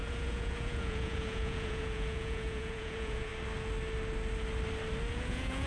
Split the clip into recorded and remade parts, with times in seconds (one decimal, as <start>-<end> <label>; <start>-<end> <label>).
0.0-3.3 remade; 3.3-5.1 recorded; 5.1-5.7 remade